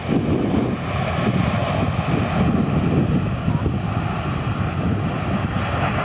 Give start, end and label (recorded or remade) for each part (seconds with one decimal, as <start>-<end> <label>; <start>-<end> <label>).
0.0-6.0 recorded